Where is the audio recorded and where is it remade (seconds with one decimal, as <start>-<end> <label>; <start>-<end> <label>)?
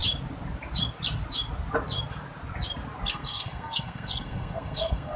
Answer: 0.0-3.1 recorded; 3.1-5.2 remade